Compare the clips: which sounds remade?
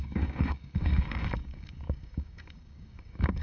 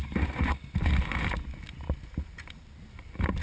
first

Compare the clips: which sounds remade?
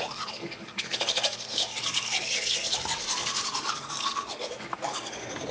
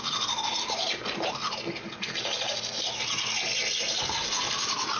first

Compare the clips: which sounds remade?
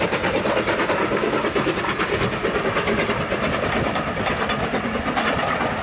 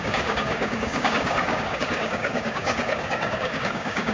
second